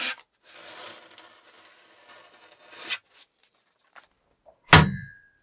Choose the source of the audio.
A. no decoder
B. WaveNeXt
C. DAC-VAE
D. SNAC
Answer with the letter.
A